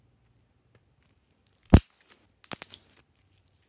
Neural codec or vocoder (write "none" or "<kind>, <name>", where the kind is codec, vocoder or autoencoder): none